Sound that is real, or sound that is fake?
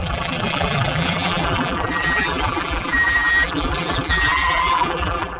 fake